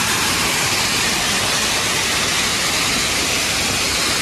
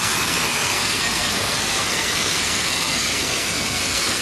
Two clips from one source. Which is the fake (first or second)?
second